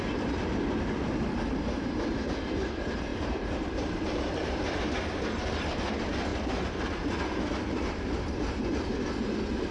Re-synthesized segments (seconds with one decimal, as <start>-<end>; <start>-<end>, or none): 3.1-4.8; 6.3-6.8